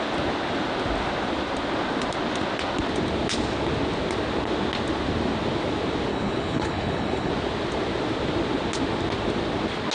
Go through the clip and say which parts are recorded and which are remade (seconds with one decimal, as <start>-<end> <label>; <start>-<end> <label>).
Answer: 0.0-6.1 recorded; 6.1-7.3 remade; 7.3-9.9 recorded

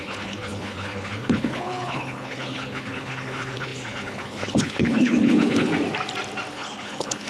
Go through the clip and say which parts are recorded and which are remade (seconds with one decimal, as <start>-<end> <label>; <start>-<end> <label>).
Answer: 0.0-5.7 remade; 5.7-6.5 recorded; 6.5-7.3 remade

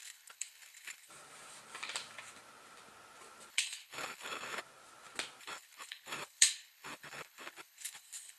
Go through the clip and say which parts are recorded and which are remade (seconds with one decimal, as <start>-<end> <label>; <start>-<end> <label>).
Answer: 0.0-1.1 remade; 1.1-3.5 recorded; 3.5-4.6 remade; 4.6-5.4 recorded; 5.4-8.4 remade

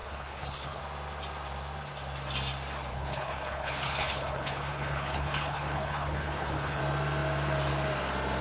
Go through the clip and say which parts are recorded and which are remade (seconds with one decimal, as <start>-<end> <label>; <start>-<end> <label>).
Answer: 0.0-0.8 remade; 0.8-2.9 recorded; 2.9-6.8 remade; 6.8-8.4 recorded

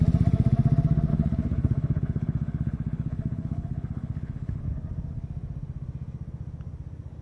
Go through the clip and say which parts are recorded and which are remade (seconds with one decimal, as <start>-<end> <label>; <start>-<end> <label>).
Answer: 0.0-1.1 recorded; 1.1-4.6 remade; 4.6-7.2 recorded

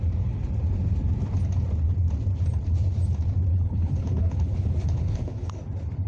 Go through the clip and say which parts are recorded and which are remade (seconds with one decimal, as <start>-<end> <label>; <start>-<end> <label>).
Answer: 0.0-3.5 recorded; 3.5-5.6 remade; 5.6-6.1 recorded

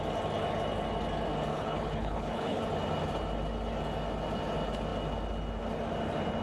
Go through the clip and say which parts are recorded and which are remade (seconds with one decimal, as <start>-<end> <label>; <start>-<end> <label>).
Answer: 0.0-1.5 recorded; 1.5-2.6 remade; 2.6-6.4 recorded

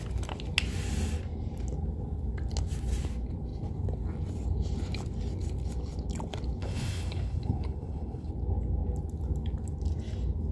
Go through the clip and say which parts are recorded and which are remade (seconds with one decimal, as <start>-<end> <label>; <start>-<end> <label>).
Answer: 0.0-6.6 recorded; 6.6-8.3 remade; 8.3-10.5 recorded